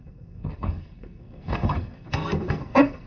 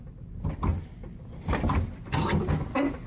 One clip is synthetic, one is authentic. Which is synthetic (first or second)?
first